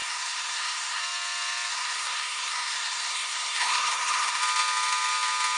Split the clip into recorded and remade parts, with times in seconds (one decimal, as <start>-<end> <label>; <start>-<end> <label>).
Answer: 0.0-1.0 remade; 1.0-1.7 recorded; 1.7-4.4 remade; 4.4-5.6 recorded